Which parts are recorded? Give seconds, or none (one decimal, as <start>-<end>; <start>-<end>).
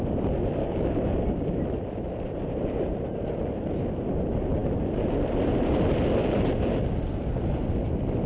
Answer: 0.0-0.6; 1.6-8.3